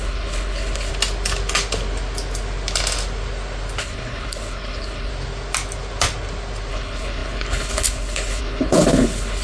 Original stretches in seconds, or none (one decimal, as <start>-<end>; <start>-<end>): 0.9-3.8; 5.1-6.7